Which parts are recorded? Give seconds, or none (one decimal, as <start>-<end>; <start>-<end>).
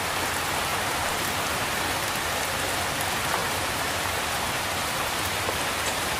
0.0-0.7; 1.8-3.4